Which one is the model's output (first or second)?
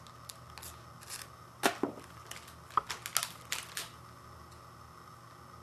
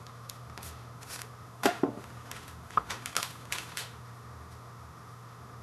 second